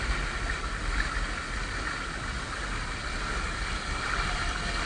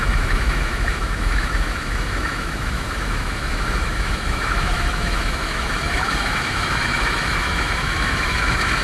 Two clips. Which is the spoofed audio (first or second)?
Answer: second